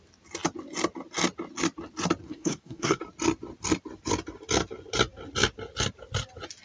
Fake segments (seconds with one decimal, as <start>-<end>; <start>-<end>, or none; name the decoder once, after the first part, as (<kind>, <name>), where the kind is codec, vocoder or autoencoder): 2.2-3.0 (codec, SNAC)